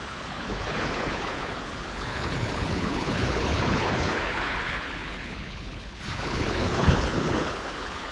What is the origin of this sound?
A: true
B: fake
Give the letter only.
B